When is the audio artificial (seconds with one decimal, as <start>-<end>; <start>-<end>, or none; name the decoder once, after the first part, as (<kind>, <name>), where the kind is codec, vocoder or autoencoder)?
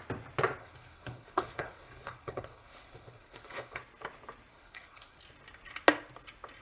0.6-3.8 (codec, HILCodec); 4.5-5.2